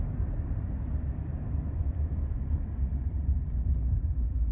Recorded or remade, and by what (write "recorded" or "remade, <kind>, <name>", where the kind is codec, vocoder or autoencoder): remade, vocoder, BigVGAN v2